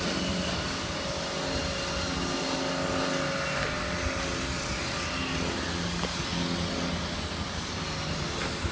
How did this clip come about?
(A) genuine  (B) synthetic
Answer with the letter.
A